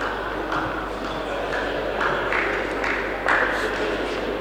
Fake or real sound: real